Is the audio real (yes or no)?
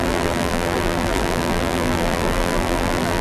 no